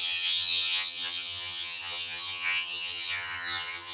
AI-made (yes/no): yes